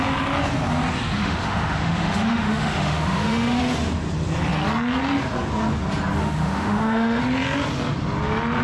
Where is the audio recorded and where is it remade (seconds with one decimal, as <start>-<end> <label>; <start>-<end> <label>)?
0.0-1.2 recorded; 1.2-3.6 remade; 3.6-6.2 recorded; 6.2-7.2 remade; 7.2-8.6 recorded